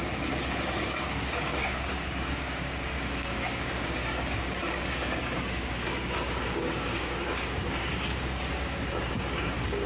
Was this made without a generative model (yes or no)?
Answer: no